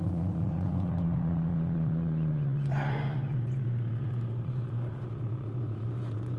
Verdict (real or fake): fake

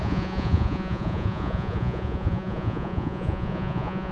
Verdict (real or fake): fake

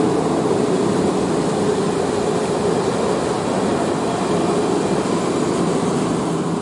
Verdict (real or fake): real